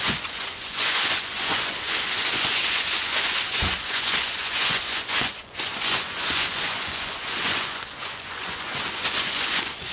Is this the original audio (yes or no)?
no